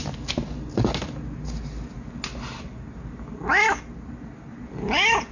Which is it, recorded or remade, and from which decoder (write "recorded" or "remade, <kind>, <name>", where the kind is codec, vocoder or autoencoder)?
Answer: recorded